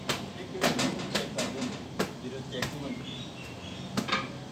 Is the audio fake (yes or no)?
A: no